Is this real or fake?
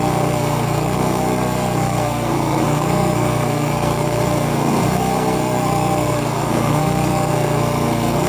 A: fake